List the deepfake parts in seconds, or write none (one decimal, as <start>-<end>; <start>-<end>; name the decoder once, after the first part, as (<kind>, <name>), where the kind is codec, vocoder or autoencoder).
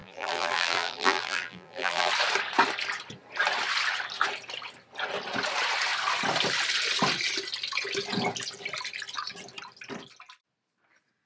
0.0-2.1 (vocoder, BigVGAN v2)